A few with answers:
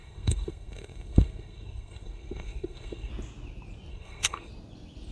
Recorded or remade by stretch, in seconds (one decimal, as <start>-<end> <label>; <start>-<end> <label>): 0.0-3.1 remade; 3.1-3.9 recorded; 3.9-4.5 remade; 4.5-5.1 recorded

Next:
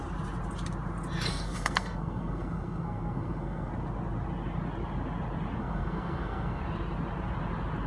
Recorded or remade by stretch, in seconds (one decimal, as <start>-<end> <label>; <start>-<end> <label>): 0.0-1.3 recorded; 1.3-3.7 remade; 3.7-5.6 recorded; 5.6-6.6 remade; 6.6-7.9 recorded

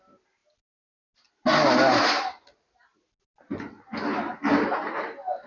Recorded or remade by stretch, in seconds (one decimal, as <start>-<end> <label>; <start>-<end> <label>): 0.0-5.5 recorded